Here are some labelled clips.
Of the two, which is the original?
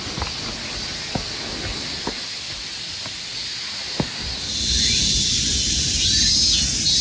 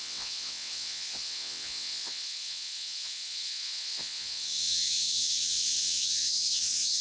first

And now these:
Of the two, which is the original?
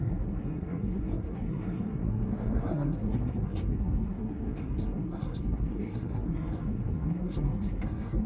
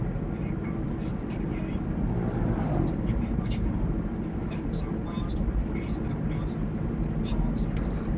second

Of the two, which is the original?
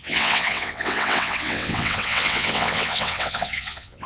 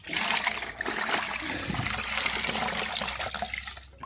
second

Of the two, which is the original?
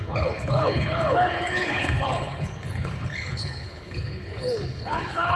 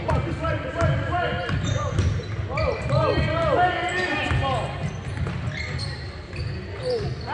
second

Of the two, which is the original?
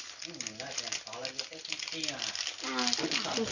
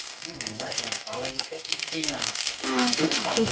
first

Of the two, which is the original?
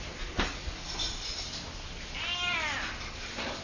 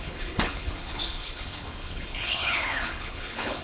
first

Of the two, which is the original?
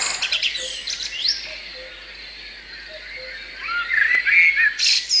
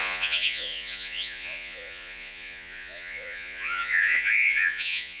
first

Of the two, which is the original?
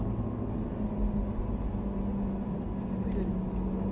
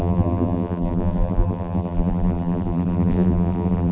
first